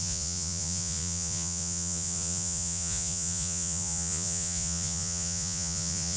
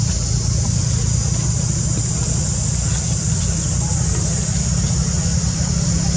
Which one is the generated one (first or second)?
first